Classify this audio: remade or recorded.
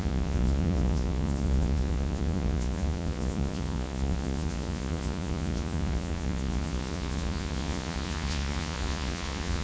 remade